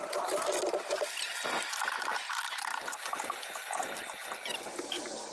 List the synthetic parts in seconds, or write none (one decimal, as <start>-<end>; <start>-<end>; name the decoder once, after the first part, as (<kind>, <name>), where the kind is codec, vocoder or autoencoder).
none